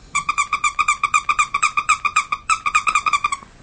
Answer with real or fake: fake